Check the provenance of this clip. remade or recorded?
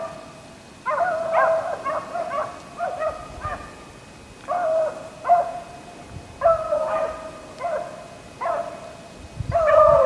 recorded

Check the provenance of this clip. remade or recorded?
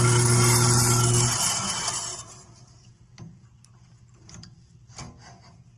recorded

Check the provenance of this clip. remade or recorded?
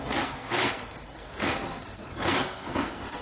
remade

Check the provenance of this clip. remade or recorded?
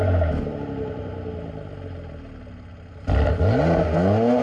recorded